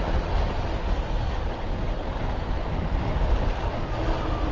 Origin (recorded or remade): recorded